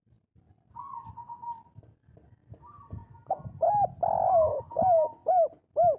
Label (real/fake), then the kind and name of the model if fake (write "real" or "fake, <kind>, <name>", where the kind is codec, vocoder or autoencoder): real